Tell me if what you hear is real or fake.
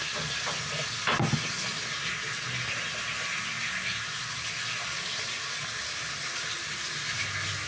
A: real